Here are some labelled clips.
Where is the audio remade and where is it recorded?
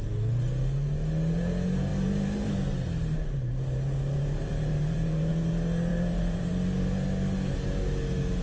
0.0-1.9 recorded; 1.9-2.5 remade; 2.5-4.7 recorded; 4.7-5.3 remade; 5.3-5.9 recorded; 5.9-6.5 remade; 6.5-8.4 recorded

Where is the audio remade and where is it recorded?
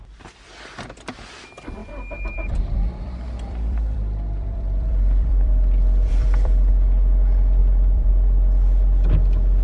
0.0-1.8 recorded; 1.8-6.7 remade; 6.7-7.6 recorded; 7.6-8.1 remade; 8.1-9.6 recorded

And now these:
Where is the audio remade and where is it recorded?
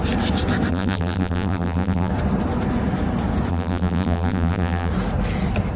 0.0-0.7 recorded; 0.7-2.1 remade; 2.1-3.5 recorded; 3.5-4.9 remade; 4.9-5.8 recorded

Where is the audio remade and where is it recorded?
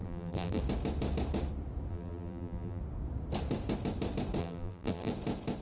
0.0-0.6 remade; 0.6-1.9 recorded; 1.9-2.8 remade; 2.8-4.4 recorded; 4.4-5.1 remade; 5.1-5.6 recorded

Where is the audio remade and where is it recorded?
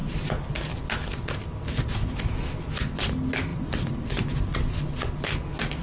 0.0-0.8 remade; 0.8-3.5 recorded; 3.5-4.8 remade; 4.8-5.8 recorded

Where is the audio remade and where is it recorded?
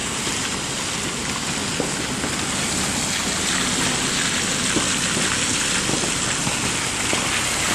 0.0-0.8 remade; 0.8-7.7 recorded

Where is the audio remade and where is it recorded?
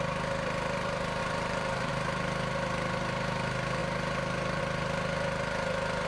0.0-1.2 recorded; 1.2-1.9 remade; 1.9-6.1 recorded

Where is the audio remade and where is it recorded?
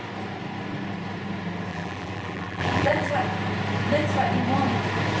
0.0-1.7 recorded; 1.7-3.1 remade; 3.1-5.2 recorded